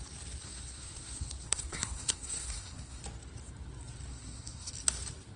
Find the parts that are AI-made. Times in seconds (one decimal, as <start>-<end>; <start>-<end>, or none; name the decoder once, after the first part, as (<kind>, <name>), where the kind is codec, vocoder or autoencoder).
0.4-3.0 (codec, SNAC); 4.1-4.7